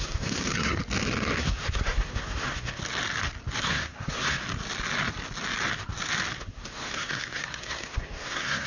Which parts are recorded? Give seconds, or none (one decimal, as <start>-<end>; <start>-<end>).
0.8-1.4; 2.8-3.6; 4.4-6.4